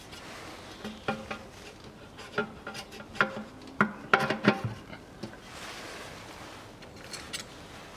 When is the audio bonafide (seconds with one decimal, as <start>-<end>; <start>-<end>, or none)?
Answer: 0.0-8.0